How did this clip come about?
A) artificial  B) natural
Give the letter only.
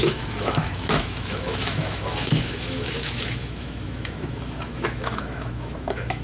A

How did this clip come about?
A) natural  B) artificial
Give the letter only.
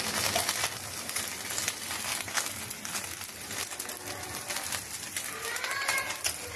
A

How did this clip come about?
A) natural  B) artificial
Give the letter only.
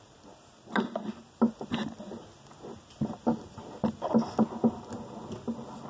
A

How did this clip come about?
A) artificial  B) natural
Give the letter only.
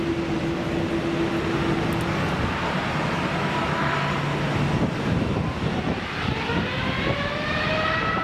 B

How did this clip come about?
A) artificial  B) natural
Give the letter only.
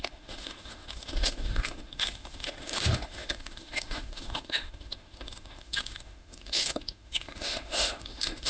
A